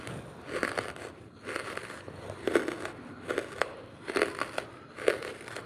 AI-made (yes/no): no